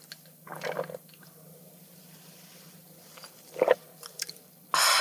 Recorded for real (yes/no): yes